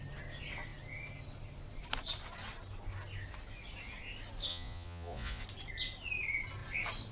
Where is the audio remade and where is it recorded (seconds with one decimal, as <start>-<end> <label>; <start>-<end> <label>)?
0.0-4.5 recorded; 4.5-5.4 remade; 5.4-7.1 recorded